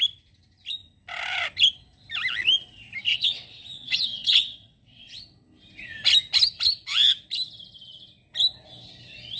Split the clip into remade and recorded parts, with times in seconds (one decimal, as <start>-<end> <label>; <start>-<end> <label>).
0.0-3.1 recorded; 3.1-5.2 remade; 5.2-9.4 recorded